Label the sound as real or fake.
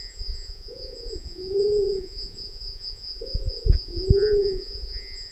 fake